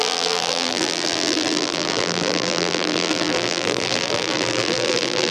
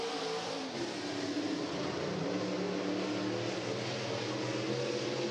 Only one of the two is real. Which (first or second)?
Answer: second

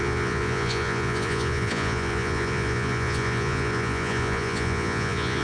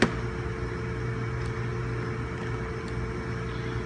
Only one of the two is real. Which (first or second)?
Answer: second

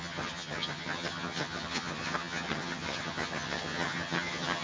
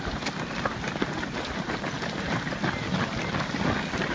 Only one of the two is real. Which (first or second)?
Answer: second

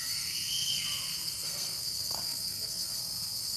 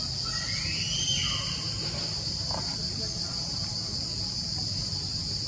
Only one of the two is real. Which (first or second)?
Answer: second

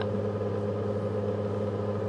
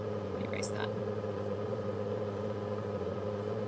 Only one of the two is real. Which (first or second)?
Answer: first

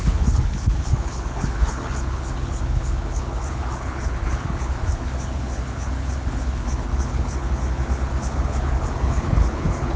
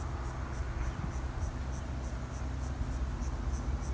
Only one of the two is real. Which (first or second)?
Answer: second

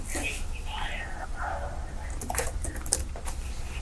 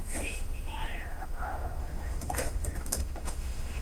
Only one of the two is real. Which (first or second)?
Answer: first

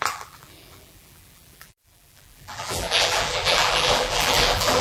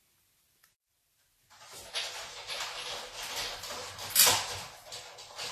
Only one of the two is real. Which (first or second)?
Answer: second